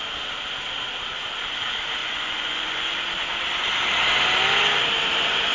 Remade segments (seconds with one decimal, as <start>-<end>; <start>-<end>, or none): 2.0-2.9

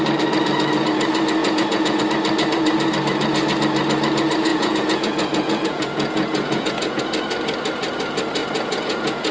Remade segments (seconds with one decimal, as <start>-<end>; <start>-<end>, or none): 1.4-2.0; 4.5-7.0; 8.4-9.3

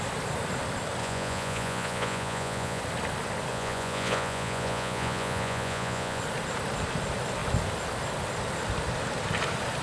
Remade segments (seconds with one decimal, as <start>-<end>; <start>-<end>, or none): 1.0-2.8; 3.5-6.2

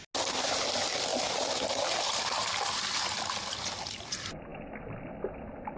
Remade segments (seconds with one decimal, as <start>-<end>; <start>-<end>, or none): none

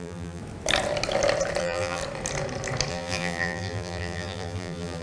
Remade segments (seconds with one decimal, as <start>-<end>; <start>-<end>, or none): 0.0-0.4; 1.6-2.0; 2.9-5.0